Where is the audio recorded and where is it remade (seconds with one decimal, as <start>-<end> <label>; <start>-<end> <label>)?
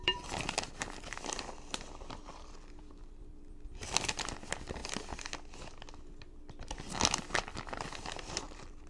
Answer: 0.0-4.8 remade; 4.8-5.9 recorded; 5.9-8.9 remade